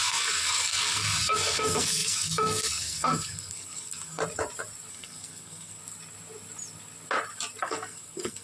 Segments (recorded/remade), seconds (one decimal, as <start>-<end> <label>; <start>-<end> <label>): 0.0-4.2 remade; 4.2-4.9 recorded; 4.9-5.8 remade; 5.8-7.6 recorded; 7.6-8.4 remade

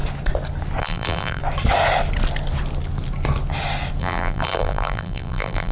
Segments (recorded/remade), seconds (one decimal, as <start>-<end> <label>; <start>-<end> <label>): 0.0-0.8 recorded; 0.8-1.4 remade; 1.4-4.0 recorded; 4.0-5.7 remade

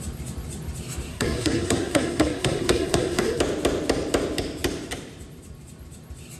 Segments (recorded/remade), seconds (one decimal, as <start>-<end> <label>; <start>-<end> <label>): 0.0-1.1 recorded; 1.1-3.4 remade; 3.4-6.4 recorded

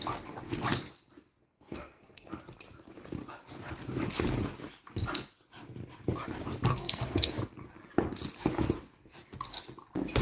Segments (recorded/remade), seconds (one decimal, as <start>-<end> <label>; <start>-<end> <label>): 0.0-1.4 recorded; 1.4-2.4 remade; 2.4-6.7 recorded; 6.7-7.3 remade; 7.3-10.2 recorded

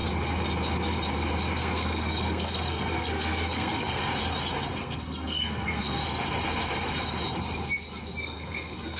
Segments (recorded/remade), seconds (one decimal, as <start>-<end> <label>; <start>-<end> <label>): 0.0-1.6 recorded; 1.6-4.0 remade; 4.0-4.8 recorded; 4.8-6.0 remade; 6.0-8.2 recorded; 8.2-9.0 remade

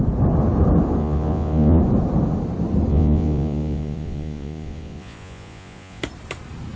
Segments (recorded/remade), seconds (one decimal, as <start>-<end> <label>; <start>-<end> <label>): 0.0-1.0 recorded; 1.0-1.8 remade; 1.8-2.9 recorded; 2.9-6.0 remade; 6.0-6.8 recorded

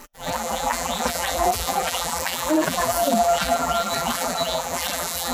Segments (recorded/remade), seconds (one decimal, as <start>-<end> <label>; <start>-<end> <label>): 0.0-5.3 remade